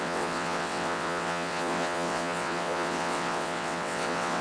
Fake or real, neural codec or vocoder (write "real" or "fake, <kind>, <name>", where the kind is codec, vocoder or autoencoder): fake, vocoder, WaveNeXt